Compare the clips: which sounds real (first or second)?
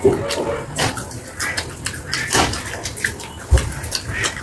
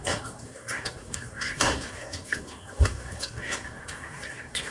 first